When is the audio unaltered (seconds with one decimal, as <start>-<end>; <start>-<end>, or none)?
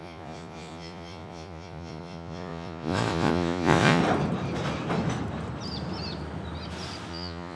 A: 4.0-7.1